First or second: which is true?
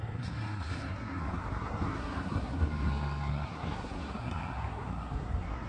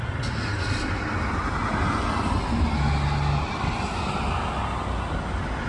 second